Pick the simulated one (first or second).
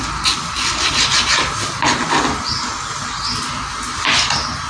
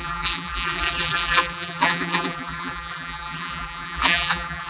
second